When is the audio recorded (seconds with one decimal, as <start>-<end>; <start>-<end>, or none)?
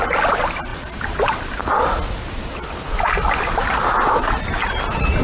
0.0-5.2